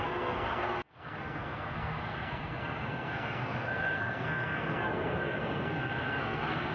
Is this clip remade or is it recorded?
remade